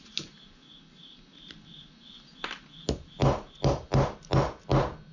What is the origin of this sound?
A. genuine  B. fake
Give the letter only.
A